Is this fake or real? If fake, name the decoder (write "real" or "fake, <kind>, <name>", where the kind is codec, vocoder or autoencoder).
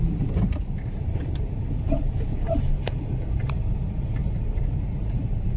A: fake, vocoder, BigVGAN v2